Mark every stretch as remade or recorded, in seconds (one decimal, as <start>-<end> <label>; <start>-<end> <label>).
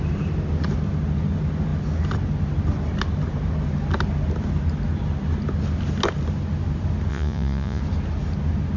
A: 0.0-7.1 recorded; 7.1-7.8 remade; 7.8-8.8 recorded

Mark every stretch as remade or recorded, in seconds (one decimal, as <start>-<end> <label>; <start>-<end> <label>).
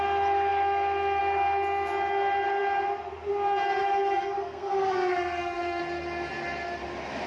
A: 0.0-3.8 recorded; 3.8-5.8 remade; 5.8-7.3 recorded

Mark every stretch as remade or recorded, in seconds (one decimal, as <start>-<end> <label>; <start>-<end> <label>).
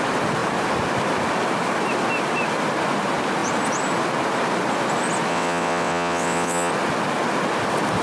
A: 0.0-5.3 recorded; 5.3-6.7 remade; 6.7-8.0 recorded